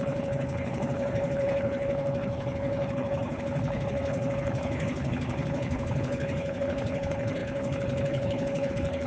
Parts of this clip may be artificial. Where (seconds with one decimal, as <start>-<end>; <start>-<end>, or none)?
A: 0.0-9.1